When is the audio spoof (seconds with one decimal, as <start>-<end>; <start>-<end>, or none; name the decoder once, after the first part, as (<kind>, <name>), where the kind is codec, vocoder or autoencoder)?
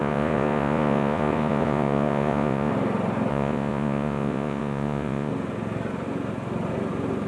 0.0-2.7 (vocoder, Vocos); 3.3-5.3